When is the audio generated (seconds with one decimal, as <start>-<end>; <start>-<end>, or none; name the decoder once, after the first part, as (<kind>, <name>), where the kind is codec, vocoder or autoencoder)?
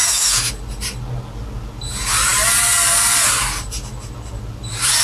0.0-0.5 (autoencoder, DAC-VAE)